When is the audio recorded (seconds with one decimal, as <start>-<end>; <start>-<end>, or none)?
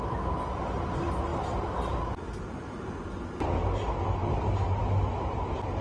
0.0-5.8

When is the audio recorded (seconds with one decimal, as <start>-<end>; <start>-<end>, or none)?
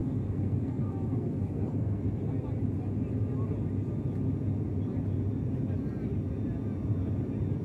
2.2-7.6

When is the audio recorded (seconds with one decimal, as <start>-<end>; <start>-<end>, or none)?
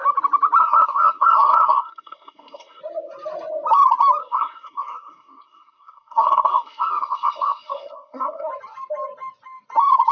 0.0-0.6; 2.8-4.2; 8.5-10.1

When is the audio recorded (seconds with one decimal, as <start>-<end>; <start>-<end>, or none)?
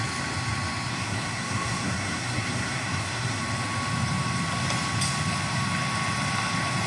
0.0-0.9; 3.4-6.9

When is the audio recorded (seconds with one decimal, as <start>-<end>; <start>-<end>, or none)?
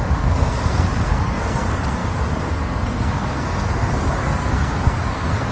none